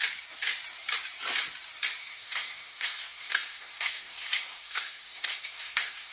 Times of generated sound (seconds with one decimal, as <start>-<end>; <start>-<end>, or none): 2.0-6.1

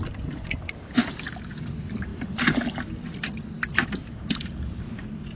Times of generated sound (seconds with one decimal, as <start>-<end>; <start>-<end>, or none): none

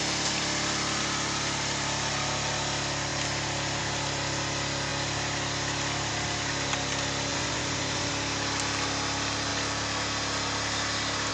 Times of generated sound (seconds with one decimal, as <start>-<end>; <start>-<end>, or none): 7.3-8.1

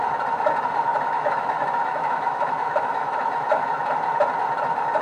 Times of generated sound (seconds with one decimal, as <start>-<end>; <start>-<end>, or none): 0.9-3.9